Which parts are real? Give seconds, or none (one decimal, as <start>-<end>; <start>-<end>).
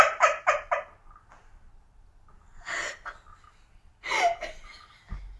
0.0-5.4